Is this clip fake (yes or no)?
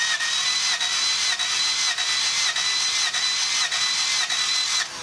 no